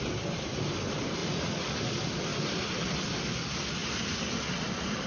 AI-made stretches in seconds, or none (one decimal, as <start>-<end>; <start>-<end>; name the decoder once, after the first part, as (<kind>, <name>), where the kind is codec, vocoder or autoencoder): 1.2-1.8 (vocoder, Vocos)